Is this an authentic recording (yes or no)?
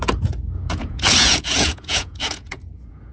no